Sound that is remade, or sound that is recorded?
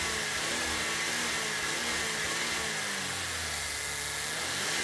recorded